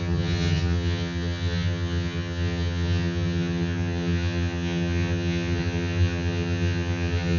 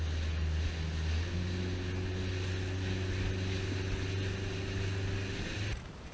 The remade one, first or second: first